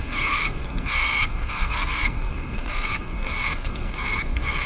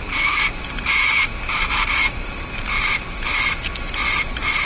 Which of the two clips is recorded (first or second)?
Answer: second